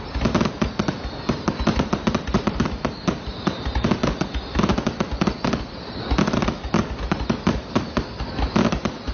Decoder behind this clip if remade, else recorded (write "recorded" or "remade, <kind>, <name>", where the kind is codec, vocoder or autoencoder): recorded